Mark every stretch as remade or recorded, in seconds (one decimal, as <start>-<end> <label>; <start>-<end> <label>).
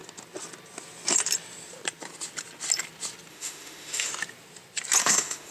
0.0-3.3 recorded; 3.3-4.1 remade; 4.1-5.0 recorded; 5.0-5.5 remade